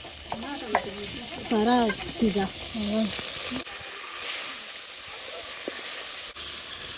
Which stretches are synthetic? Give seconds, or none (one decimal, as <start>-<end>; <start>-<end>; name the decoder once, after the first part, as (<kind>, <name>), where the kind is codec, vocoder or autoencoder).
none